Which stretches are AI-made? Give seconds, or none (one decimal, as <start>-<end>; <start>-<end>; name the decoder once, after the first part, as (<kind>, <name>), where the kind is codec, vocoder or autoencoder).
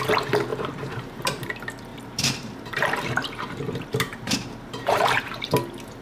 0.5-1.5 (vocoder, BigVGAN v2); 1.9-5.5